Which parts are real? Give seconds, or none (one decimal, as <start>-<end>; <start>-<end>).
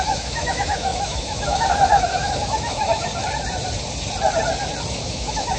3.1-4.9